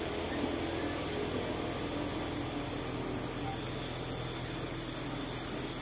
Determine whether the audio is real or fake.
real